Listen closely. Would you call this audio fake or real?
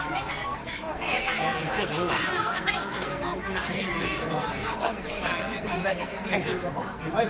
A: fake